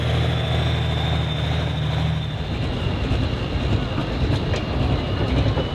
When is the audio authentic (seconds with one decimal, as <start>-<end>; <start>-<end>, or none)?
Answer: 0.0-4.0; 5.0-5.7